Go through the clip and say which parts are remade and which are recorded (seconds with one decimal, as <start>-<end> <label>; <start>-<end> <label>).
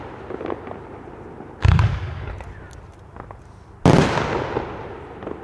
0.0-1.6 recorded; 1.6-2.3 remade; 2.3-5.4 recorded